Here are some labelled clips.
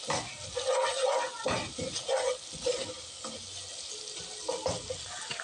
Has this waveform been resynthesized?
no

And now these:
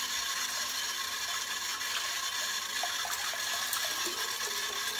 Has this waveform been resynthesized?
no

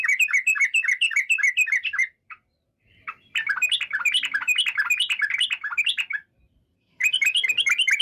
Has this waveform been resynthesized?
yes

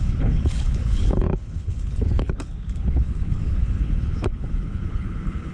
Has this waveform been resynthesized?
yes